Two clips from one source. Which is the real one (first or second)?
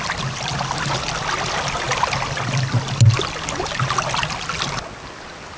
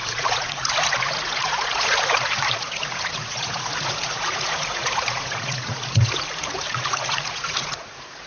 first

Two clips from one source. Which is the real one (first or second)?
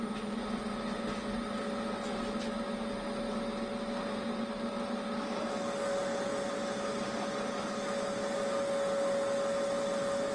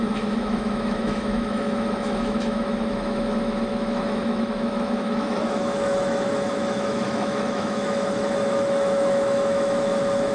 first